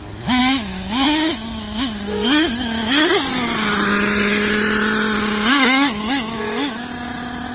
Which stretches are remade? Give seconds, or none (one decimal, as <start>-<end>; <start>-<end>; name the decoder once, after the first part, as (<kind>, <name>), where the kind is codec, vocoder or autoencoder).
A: 0.4-3.1 (autoencoder, DAC-VAE); 5.5-6.9